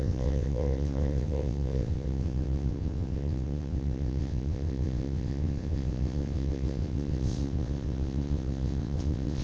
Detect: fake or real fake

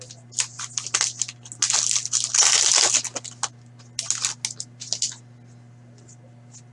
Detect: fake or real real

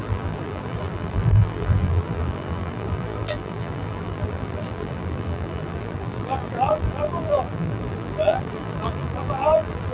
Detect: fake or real fake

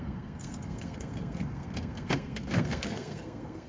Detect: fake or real fake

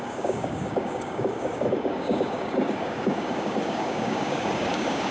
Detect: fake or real fake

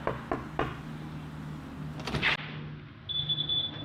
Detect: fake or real real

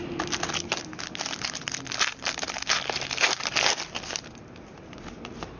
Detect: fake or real real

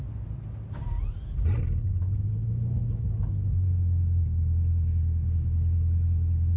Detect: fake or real real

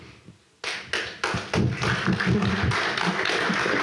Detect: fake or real real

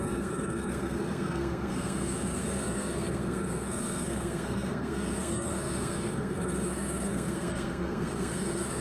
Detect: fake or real fake